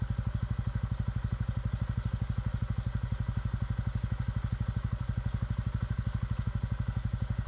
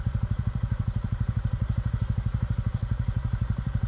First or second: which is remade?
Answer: second